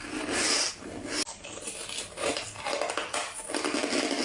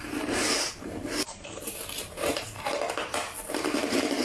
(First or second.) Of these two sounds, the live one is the first